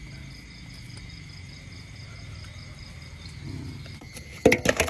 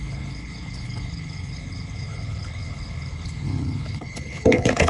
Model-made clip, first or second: second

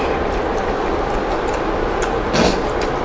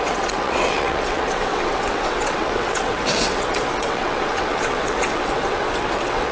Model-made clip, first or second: second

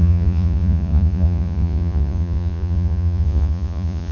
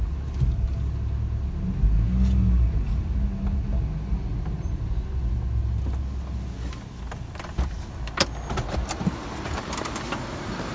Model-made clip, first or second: first